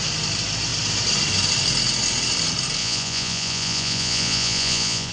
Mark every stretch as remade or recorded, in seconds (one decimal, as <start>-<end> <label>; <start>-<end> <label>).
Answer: 0.0-2.8 recorded; 2.8-5.1 remade